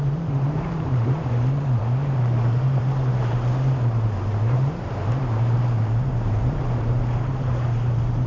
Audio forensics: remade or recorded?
remade